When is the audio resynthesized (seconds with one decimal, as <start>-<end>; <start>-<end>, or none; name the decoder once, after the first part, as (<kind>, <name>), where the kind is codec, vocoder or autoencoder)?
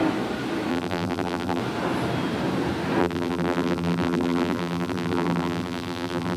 0.7-1.6 (vocoder, BigVGAN v2); 3.0-6.4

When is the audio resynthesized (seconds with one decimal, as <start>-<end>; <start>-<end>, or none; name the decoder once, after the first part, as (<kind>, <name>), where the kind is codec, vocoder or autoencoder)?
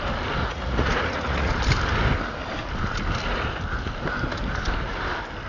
0.4-1.5 (vocoder, Vocos)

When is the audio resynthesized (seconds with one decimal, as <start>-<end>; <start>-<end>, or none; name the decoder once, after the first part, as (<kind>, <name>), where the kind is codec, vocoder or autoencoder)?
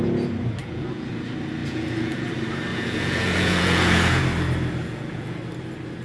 0.6-1.1 (vocoder, Vocos); 1.6-2.3; 2.7-4.2; 4.8-5.4